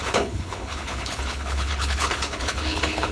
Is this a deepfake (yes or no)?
yes